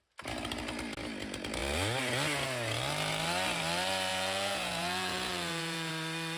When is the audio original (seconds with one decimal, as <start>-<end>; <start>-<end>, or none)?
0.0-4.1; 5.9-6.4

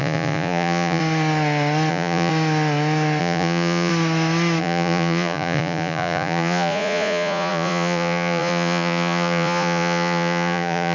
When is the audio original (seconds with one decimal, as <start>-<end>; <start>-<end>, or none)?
1.0-1.9; 2.3-3.2; 3.9-4.6

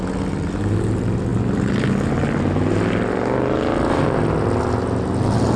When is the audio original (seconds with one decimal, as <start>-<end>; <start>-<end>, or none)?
0.0-5.6

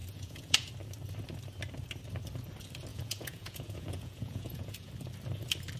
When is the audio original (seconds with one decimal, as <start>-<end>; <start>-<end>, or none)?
0.7-2.9; 4.9-5.8

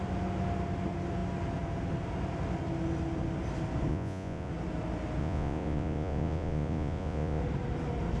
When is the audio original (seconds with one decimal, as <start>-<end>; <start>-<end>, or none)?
0.0-3.9; 4.5-5.2; 7.4-8.2